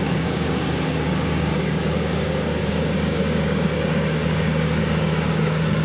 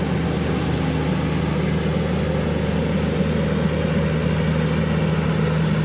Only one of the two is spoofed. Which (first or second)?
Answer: first